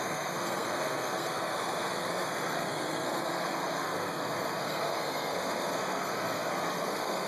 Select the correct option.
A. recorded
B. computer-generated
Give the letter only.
B